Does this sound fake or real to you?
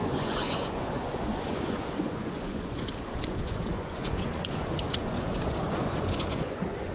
fake